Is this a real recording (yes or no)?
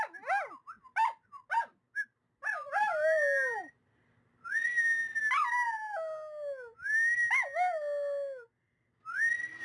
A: yes